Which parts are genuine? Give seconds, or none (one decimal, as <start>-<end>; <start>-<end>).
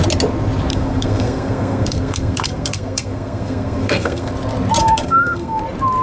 0.0-0.7; 4.3-4.8; 5.6-6.0